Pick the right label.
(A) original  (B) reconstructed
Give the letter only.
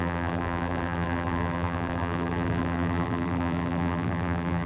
B